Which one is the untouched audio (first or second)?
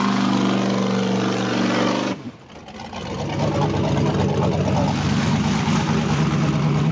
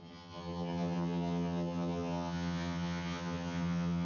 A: first